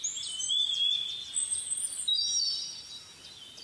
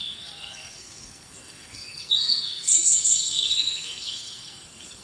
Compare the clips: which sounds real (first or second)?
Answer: first